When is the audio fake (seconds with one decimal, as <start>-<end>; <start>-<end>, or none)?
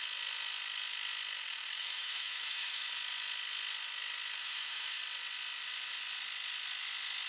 1.8-2.9; 4.4-5.0